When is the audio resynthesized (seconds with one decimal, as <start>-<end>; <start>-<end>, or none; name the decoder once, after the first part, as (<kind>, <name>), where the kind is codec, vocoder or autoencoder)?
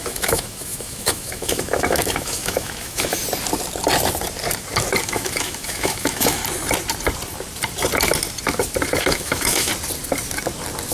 0.0-3.2 (autoencoder, DAC-VAE); 5.0-6.4; 9.0-9.7